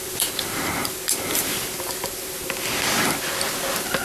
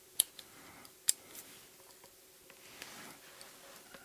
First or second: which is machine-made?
first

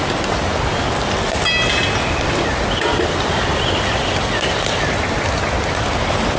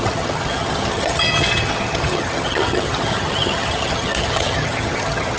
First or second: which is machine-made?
second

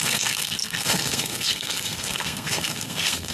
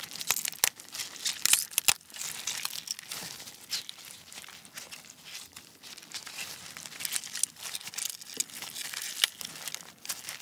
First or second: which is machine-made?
first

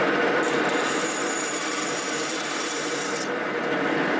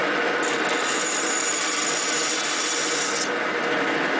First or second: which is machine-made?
first